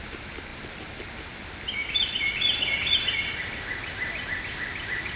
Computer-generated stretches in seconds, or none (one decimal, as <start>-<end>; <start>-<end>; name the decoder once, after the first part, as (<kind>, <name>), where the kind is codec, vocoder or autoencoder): none